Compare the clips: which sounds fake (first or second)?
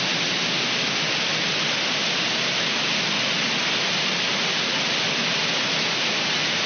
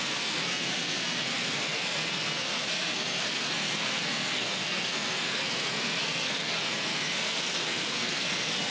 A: second